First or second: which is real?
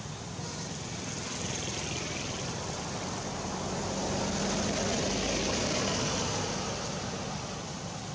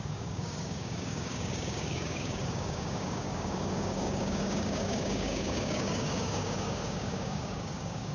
first